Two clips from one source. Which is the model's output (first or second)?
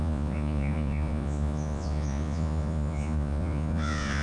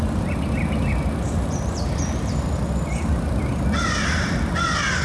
first